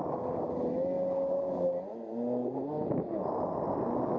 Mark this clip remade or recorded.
recorded